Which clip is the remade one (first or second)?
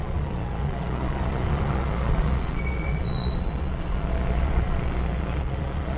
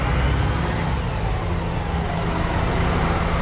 first